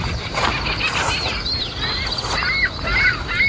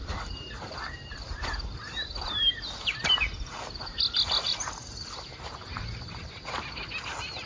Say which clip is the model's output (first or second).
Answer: second